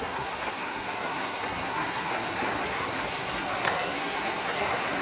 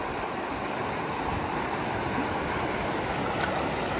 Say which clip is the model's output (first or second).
first